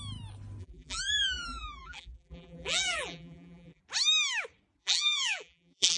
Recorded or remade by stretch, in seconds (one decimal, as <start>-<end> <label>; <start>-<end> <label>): 0.0-0.6 recorded; 0.6-3.8 remade; 3.8-4.8 recorded; 4.8-6.0 remade